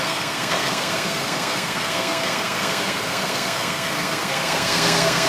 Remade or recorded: remade